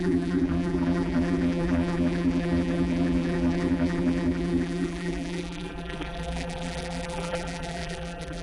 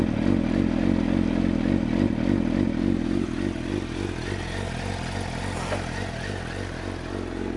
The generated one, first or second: first